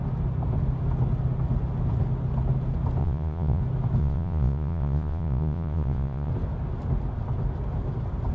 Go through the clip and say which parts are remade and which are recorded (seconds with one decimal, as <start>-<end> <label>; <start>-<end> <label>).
0.0-3.0 recorded; 3.0-3.6 remade; 3.6-4.0 recorded; 4.0-6.3 remade; 6.3-8.3 recorded